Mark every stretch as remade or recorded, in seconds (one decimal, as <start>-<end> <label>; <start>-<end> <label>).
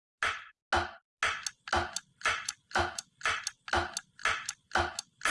0.0-2.1 recorded; 2.1-3.4 remade; 3.4-5.3 recorded